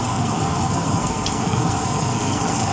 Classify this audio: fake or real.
fake